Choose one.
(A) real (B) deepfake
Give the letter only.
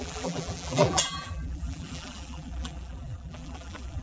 B